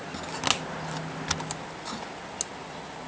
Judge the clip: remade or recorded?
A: recorded